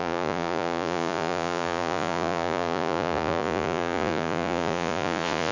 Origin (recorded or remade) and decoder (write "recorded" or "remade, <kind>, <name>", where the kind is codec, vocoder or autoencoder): remade, vocoder, Vocos